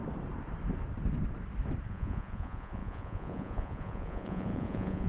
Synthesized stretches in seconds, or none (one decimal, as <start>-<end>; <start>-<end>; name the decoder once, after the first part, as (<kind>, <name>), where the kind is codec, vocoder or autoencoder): 1.9-5.1 (vocoder, Vocos)